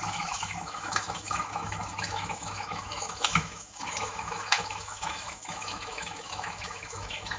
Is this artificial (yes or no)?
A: yes